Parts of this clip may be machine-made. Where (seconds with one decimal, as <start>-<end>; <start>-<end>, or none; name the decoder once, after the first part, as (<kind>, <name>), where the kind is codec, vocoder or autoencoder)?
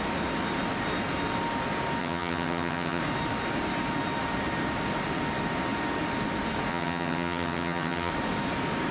2.0-3.0 (vocoder, HiFi-GAN); 6.7-8.1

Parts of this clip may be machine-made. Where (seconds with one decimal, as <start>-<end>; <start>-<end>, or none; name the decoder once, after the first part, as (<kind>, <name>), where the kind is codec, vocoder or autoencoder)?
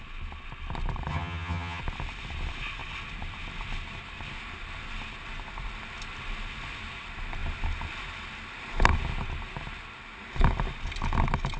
1.1-1.8 (vocoder, HiFi-GAN)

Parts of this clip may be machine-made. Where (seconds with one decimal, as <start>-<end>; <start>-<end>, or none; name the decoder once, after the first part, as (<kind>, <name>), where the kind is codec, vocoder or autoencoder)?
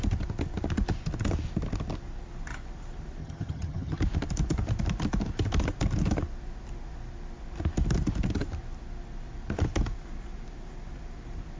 3.2-4.0 (vocoder, HiFi-GAN)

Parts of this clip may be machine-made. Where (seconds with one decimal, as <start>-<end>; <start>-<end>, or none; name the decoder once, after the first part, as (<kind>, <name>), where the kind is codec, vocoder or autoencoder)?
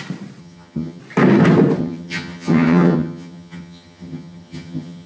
0.4-1.0 (vocoder, HiFi-GAN); 1.8-5.1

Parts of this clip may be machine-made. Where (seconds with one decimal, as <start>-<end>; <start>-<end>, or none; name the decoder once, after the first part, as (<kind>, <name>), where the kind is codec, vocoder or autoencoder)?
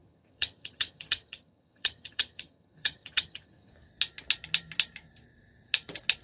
0.0-3.7 (vocoder, HiFi-GAN)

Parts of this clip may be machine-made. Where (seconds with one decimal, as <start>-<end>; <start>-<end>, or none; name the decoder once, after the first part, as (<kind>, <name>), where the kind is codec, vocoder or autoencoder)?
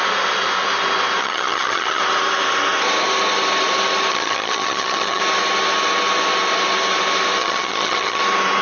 1.2-2.0 (vocoder, HiFi-GAN); 4.1-5.2; 7.4-8.2